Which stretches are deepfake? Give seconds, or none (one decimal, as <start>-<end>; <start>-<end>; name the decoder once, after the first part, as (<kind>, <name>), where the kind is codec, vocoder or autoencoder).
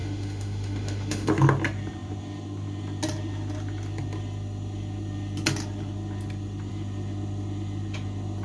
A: 0.0-1.3 (autoencoder, DAC-VAE)